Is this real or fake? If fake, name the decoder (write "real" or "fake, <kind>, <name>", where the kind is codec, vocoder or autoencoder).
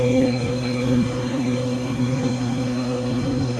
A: fake, codec, SNAC